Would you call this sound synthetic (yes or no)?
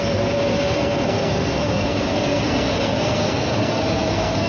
yes